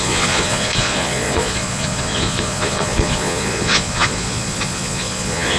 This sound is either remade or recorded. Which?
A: remade